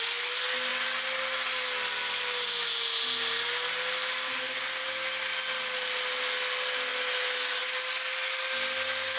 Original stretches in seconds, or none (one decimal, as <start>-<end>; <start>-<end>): 0.0-9.2